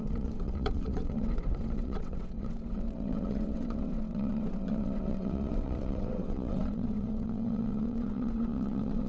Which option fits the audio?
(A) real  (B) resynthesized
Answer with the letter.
B